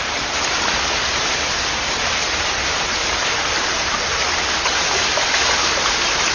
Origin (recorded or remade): remade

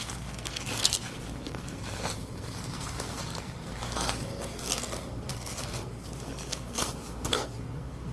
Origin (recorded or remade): remade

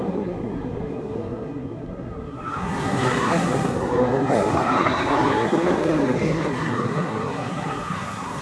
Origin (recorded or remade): remade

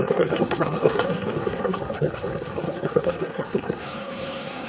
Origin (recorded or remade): remade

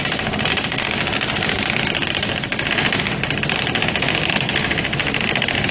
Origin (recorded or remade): recorded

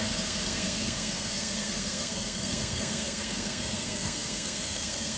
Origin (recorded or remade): remade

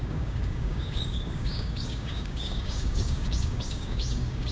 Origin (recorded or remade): remade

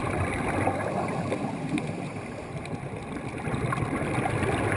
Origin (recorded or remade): remade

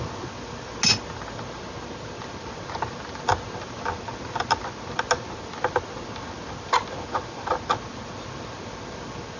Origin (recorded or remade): recorded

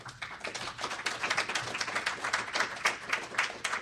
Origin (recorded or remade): recorded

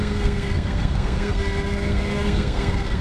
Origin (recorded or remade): remade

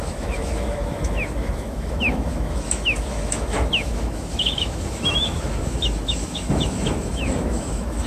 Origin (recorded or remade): remade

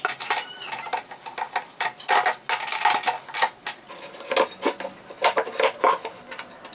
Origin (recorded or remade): recorded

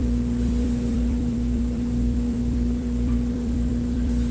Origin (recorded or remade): remade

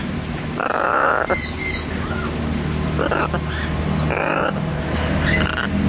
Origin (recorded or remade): recorded